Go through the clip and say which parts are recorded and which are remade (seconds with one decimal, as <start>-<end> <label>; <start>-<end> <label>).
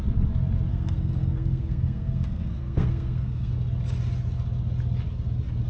0.0-0.7 recorded; 0.7-3.5 remade; 3.5-5.7 recorded